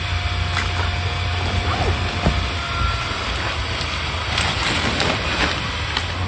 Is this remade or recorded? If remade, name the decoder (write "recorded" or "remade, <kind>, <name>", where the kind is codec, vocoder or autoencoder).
recorded